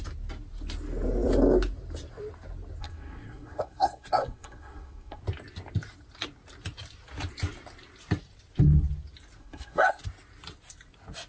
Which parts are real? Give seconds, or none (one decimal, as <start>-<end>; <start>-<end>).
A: 0.0-2.8; 5.2-9.4; 10.0-11.3